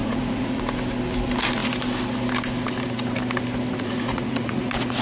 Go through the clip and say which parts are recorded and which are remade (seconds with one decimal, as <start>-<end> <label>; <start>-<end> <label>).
0.0-0.6 remade; 0.6-3.7 recorded; 3.7-5.0 remade